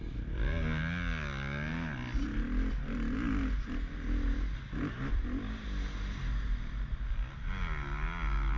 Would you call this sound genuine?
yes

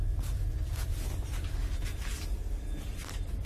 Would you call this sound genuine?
yes